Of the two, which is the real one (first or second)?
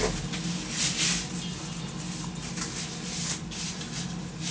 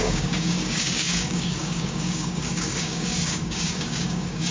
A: first